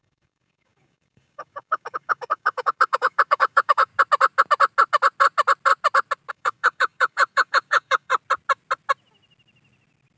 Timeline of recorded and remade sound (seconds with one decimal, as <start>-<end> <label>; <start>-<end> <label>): 0.0-3.9 remade; 3.9-6.3 recorded; 6.3-8.1 remade; 8.1-10.2 recorded

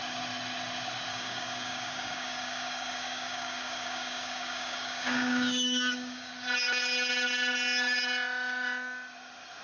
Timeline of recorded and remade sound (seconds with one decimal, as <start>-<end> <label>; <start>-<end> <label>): 0.0-1.1 recorded; 1.1-6.3 remade; 6.3-9.6 recorded

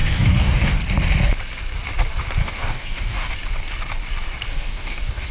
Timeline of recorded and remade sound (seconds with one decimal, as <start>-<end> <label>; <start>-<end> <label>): 0.0-0.8 remade; 0.8-2.4 recorded; 2.4-3.3 remade; 3.3-4.5 recorded; 4.5-5.3 remade

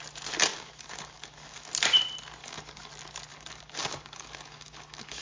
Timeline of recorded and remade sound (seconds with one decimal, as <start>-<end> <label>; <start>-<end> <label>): 0.0-0.5 recorded; 0.5-1.7 remade; 1.7-2.4 recorded; 2.4-2.9 remade; 2.9-3.3 recorded; 3.3-5.2 remade

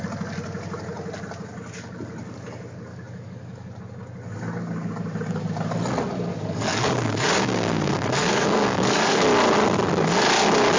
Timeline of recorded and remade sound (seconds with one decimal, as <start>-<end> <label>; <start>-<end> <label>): 0.0-2.9 recorded; 2.9-3.8 remade; 3.8-6.3 recorded; 6.3-9.2 remade; 9.2-10.8 recorded

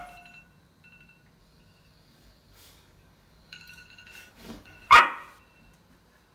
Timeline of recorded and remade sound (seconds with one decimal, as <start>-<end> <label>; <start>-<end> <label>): 0.0-1.4 recorded; 1.4-5.0 remade; 5.0-6.3 recorded

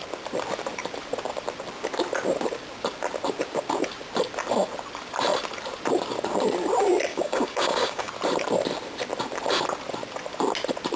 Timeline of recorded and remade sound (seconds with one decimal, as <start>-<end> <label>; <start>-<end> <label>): 0.0-7.1 recorded; 7.1-8.1 remade; 8.1-11.0 recorded

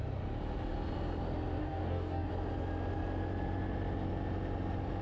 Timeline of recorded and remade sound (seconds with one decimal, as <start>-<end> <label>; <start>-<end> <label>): 0.0-1.6 recorded; 1.6-2.3 remade; 2.3-5.0 recorded